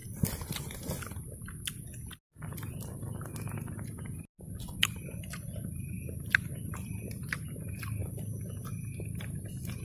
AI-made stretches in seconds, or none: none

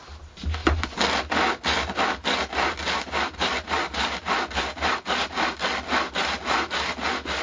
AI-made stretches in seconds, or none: none

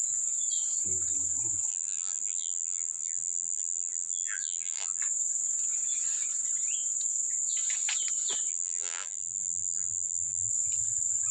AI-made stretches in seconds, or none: 1.7-5.0 (vocoder, BigVGAN v2); 8.5-10.5

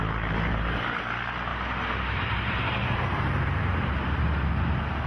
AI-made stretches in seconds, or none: 1.5-4.6 (vocoder, BigVGAN v2)

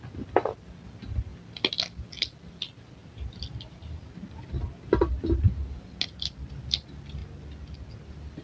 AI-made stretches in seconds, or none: 3.0-4.3 (vocoder, BigVGAN v2)

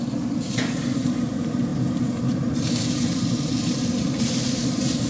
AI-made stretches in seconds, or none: 0.0-5.1 (vocoder, BigVGAN v2)